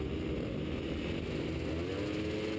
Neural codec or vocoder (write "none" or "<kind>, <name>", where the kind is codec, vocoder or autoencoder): none